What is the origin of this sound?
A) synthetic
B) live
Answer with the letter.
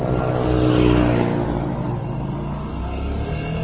B